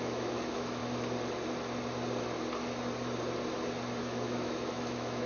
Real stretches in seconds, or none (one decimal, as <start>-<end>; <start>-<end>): 0.8-4.0

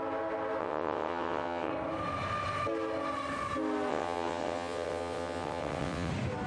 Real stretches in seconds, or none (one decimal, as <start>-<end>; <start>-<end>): 0.0-0.6; 1.7-3.9; 6.1-6.5